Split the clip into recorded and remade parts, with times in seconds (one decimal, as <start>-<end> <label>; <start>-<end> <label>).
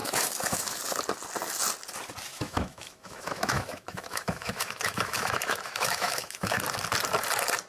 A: 0.0-0.8 remade; 0.8-2.3 recorded; 2.3-6.6 remade; 6.6-7.7 recorded